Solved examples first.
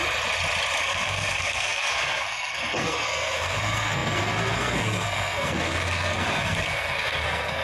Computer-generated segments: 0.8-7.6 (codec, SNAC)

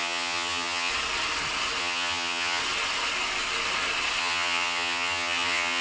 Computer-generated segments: 0.0-0.9 (vocoder, HiFi-GAN); 1.8-2.6; 4.2-5.8

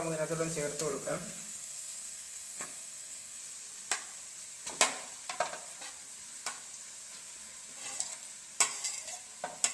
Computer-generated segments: 0.9-3.4 (codec, SNAC)